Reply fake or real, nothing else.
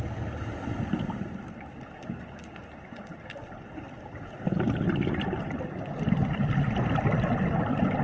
real